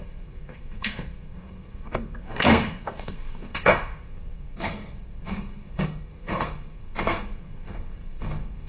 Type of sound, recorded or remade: remade